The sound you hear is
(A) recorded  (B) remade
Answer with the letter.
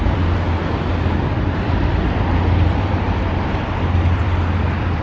B